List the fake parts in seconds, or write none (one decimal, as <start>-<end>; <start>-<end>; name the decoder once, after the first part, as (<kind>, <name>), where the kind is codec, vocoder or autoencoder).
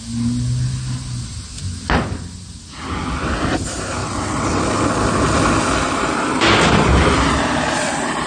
4.0-4.6 (vocoder, WaveNeXt)